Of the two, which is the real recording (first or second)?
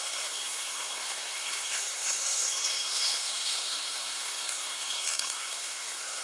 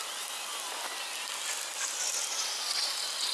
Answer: second